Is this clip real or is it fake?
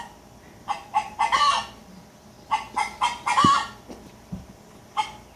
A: fake